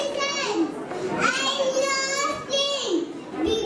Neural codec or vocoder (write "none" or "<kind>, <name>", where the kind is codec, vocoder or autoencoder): none